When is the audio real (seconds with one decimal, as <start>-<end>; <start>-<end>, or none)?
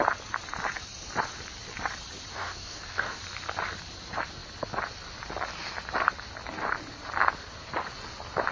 0.0-2.3; 3.2-8.5